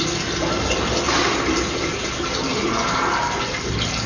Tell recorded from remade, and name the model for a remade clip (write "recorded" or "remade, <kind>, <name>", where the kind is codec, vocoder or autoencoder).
recorded